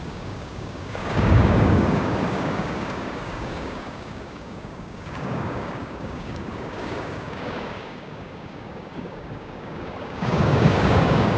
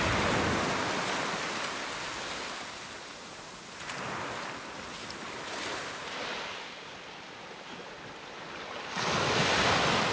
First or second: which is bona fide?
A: second